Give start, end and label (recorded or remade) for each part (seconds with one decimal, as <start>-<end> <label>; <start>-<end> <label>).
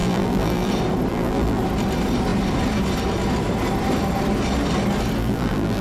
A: 0.0-0.7 remade; 0.7-1.1 recorded; 1.1-1.6 remade; 1.6-5.2 recorded; 5.2-5.8 remade